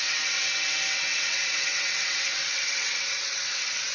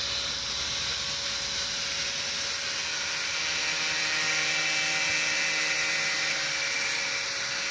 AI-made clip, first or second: first